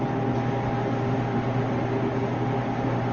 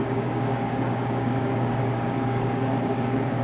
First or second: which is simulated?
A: second